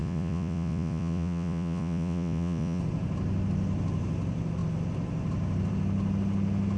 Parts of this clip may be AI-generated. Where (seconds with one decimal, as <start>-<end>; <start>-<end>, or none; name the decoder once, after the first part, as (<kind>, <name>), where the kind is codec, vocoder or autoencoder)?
0.0-2.8 (vocoder, Vocos)